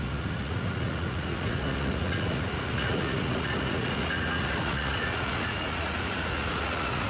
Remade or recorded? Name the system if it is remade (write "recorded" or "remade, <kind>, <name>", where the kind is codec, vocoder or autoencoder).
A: remade, vocoder, Vocos